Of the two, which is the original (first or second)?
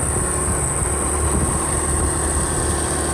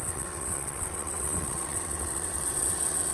first